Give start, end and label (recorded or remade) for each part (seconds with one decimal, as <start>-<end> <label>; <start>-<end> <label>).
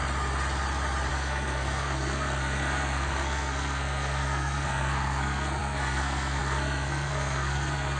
0.0-1.1 recorded; 1.1-8.0 remade